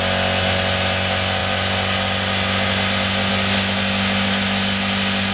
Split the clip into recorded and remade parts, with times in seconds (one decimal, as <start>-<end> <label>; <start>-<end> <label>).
0.0-5.3 recorded